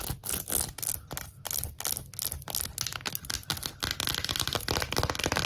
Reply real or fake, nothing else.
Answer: real